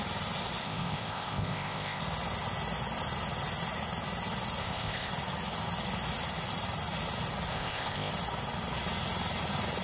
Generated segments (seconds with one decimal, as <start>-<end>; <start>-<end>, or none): 0.6-2.0; 4.6-5.1; 7.5-8.1